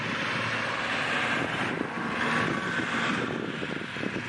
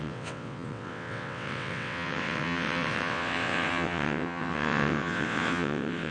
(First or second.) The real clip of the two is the first